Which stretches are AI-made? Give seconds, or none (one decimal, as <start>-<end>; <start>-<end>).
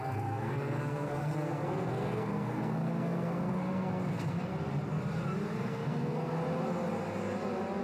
0.0-4.5; 5.6-6.4